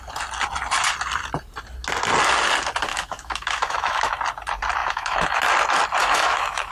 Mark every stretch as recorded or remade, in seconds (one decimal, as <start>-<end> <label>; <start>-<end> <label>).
0.0-2.9 recorded; 2.9-4.2 remade; 4.2-4.8 recorded; 4.8-5.4 remade; 5.4-6.0 recorded; 6.0-6.7 remade

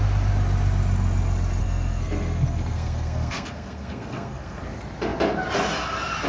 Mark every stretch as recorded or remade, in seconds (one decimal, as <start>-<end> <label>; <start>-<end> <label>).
0.0-1.6 recorded; 1.6-4.6 remade; 4.6-6.3 recorded